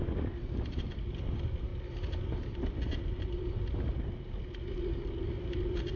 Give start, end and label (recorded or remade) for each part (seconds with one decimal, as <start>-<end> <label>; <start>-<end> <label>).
0.0-6.0 recorded